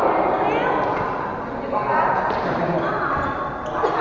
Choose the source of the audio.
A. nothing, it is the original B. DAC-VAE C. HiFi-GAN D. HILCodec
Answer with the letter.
A